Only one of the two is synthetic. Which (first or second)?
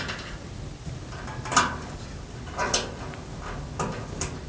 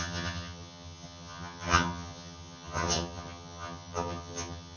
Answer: second